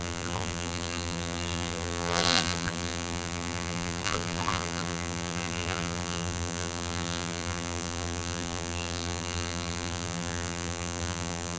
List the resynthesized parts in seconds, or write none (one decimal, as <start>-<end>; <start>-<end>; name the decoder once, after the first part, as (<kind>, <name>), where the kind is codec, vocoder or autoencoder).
0.0-11.6 (vocoder, BigVGAN v2)